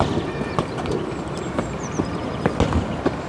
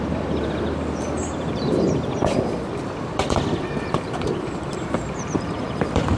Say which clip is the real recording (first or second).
first